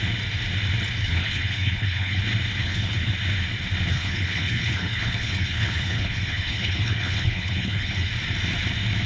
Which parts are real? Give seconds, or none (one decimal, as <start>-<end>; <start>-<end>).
0.0-1.0; 2.2-2.6; 3.1-3.9; 8.1-9.1